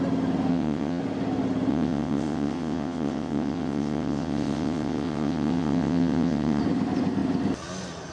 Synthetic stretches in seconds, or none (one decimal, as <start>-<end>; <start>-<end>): 0.5-1.0; 1.7-6.6